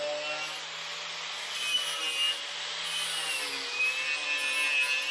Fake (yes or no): no